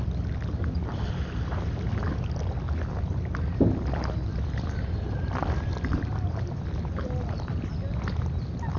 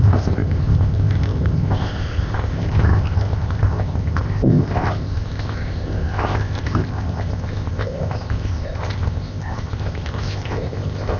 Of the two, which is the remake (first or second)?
second